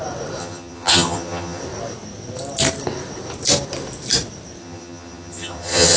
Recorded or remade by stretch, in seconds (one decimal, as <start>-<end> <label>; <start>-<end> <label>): 0.0-0.4 recorded; 0.4-1.6 remade; 1.6-4.6 recorded; 4.6-6.0 remade